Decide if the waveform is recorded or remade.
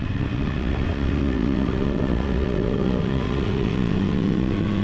remade